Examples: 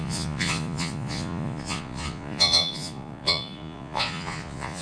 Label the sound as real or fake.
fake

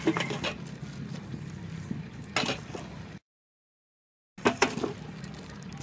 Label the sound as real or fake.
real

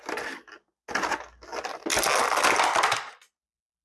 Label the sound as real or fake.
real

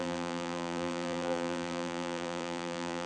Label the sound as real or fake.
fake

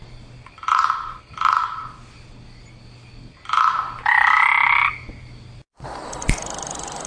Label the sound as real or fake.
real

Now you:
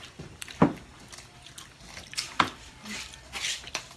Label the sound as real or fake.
real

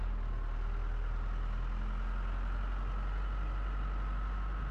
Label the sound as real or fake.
real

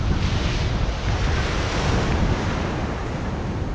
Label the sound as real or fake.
real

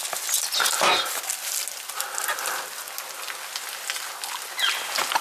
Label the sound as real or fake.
real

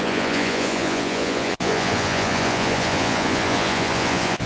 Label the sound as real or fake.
fake